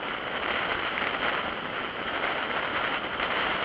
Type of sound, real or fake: real